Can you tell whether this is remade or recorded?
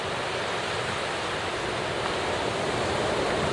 recorded